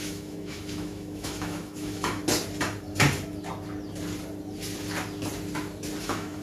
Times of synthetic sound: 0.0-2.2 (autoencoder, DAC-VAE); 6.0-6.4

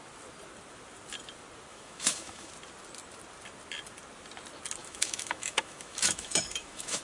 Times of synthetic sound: 1.7-2.5 (autoencoder, DAC-VAE); 4.8-7.0